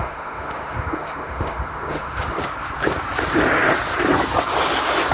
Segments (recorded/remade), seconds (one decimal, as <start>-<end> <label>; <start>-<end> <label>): 0.0-2.4 remade; 2.4-5.1 recorded